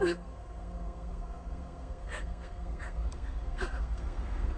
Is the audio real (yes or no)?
no